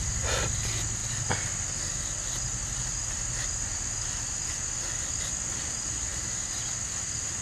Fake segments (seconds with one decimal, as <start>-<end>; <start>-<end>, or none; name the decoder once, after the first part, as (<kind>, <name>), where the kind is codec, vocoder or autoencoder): none